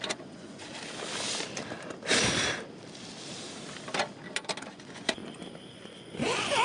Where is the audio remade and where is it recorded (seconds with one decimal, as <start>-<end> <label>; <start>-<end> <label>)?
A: 0.0-0.7 remade; 0.7-4.7 recorded; 4.7-5.2 remade; 5.2-5.7 recorded; 5.7-6.6 remade